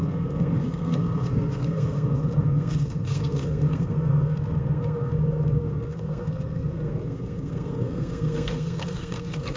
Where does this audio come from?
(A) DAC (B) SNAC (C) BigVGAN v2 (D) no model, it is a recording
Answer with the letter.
B